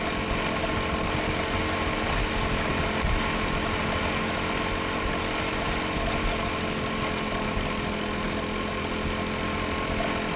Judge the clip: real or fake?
real